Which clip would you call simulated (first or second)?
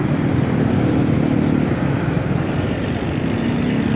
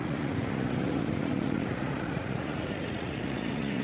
second